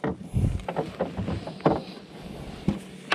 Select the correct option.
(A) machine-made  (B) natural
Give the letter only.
B